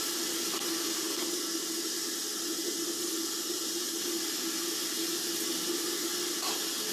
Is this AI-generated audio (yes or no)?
no